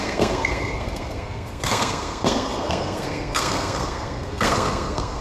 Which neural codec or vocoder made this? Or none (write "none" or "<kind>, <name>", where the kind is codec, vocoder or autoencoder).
codec, SNAC